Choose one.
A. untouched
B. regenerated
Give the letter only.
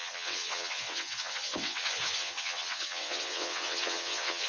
B